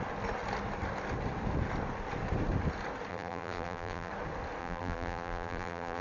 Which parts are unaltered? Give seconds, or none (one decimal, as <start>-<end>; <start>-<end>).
0.0-3.1; 4.1-4.6